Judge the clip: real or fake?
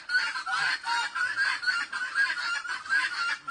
real